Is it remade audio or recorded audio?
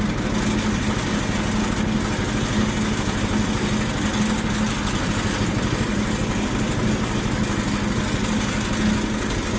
recorded